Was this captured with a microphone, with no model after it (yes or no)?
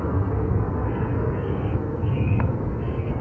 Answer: no